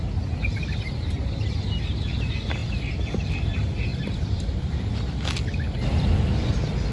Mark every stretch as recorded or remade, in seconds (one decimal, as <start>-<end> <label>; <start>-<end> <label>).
0.0-2.6 recorded; 2.6-3.2 remade; 3.2-3.9 recorded; 3.9-5.2 remade; 5.2-6.9 recorded

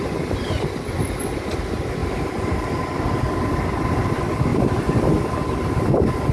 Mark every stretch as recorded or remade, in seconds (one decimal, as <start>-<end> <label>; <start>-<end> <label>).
0.0-6.3 recorded

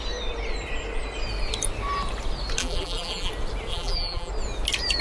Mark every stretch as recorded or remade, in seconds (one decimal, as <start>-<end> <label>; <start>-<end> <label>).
0.0-2.6 recorded; 2.6-3.3 remade; 3.3-3.7 recorded; 3.7-4.3 remade; 4.3-5.0 recorded

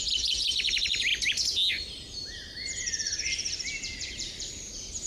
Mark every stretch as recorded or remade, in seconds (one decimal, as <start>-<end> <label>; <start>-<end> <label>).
0.0-1.1 remade; 1.1-1.7 recorded; 1.7-5.1 remade

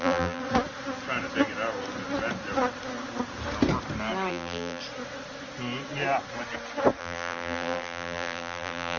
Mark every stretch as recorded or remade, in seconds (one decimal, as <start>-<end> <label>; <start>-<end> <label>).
0.0-0.4 remade; 0.4-4.3 recorded; 4.3-4.8 remade; 4.8-7.0 recorded; 7.0-9.0 remade

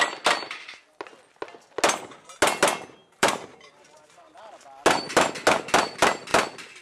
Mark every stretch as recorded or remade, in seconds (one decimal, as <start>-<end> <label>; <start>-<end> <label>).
0.0-3.0 recorded; 3.0-4.4 remade; 4.4-6.8 recorded